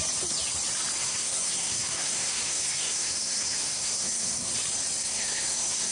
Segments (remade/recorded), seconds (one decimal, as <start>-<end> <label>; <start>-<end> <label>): 0.0-1.0 recorded; 1.0-4.5 remade; 4.5-5.0 recorded; 5.0-5.9 remade